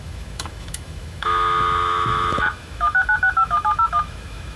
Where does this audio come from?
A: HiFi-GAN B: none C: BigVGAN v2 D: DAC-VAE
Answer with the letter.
D